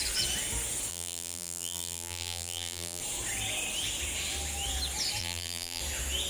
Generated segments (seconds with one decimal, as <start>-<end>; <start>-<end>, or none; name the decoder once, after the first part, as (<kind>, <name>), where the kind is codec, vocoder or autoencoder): 0.9-3.0 (vocoder, BigVGAN v2); 5.2-5.8